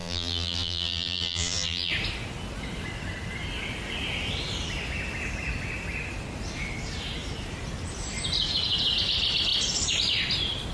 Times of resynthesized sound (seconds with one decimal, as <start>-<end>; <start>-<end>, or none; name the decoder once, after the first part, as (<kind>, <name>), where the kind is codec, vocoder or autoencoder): 0.0-1.9 (vocoder, BigVGAN v2)